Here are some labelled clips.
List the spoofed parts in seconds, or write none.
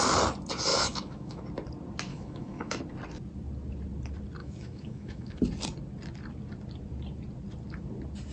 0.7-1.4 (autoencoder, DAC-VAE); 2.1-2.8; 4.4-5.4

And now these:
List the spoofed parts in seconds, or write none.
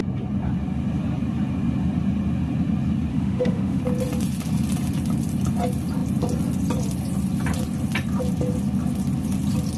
3.1-3.8 (autoencoder, DAC-VAE)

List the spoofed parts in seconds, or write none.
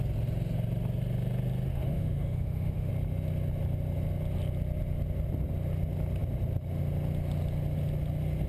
1.7-2.9 (autoencoder, DAC-VAE)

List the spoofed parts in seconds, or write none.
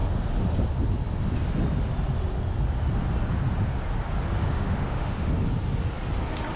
4.4-5.3 (autoencoder, DAC-VAE)